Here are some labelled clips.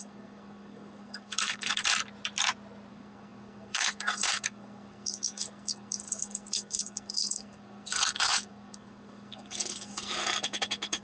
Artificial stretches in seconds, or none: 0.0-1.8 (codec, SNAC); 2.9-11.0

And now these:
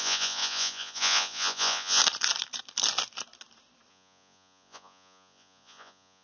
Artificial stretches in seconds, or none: 0.0-2.0 (vocoder, Vocos); 3.9-6.2

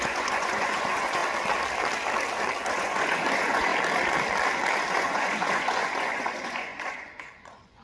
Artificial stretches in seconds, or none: 0.0-1.2 (vocoder, Vocos); 2.7-3.7; 4.9-7.8

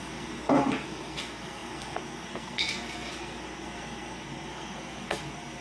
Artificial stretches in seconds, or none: 0.0-5.6 (codec, SNAC)

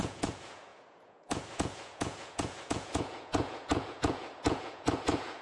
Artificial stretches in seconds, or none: 0.0-5.4 (vocoder, Vocos)